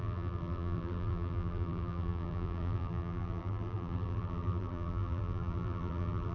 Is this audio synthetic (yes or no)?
yes